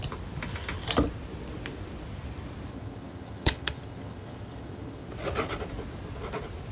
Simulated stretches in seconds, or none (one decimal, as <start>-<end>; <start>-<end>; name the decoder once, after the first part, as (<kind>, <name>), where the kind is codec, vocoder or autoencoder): 2.7-5.1 (vocoder, HiFi-GAN)